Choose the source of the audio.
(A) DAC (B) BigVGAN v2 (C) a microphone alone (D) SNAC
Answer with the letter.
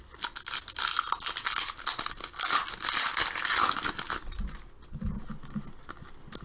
C